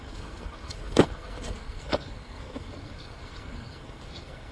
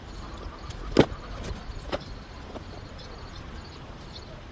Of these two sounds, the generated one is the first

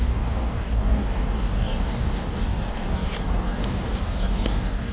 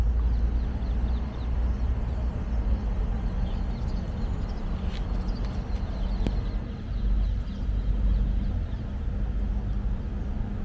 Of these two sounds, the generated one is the first